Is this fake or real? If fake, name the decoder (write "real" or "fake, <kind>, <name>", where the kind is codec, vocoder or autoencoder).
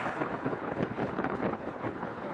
fake, codec, HILCodec